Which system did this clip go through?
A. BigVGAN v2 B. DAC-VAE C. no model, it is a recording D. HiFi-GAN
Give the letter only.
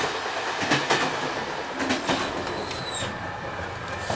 C